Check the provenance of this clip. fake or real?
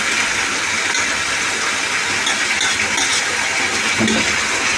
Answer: real